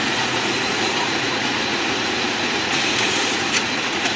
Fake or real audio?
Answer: fake